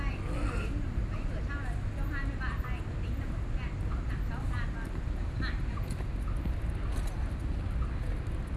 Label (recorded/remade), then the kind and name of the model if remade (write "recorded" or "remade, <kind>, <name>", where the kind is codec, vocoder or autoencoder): recorded